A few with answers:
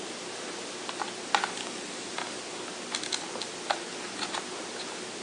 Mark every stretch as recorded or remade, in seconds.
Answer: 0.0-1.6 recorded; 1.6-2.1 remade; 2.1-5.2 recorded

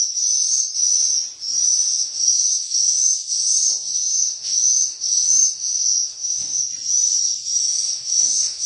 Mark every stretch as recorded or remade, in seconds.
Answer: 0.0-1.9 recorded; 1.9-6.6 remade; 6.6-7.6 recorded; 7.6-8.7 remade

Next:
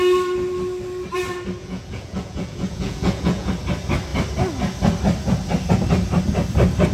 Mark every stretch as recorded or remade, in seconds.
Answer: 0.0-1.6 recorded; 1.6-3.5 remade; 3.5-6.9 recorded

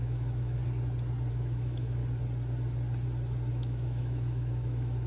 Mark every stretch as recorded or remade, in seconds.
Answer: 0.0-0.6 remade; 0.6-1.3 recorded; 1.3-2.0 remade; 2.0-3.5 recorded; 3.5-5.1 remade

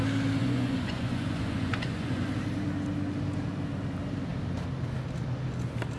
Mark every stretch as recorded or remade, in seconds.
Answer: 0.0-0.4 recorded; 0.4-2.3 remade; 2.3-6.0 recorded

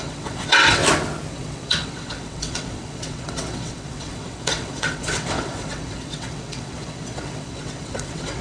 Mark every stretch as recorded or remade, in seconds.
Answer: 0.0-0.8 remade; 0.8-1.3 recorded; 1.3-8.4 remade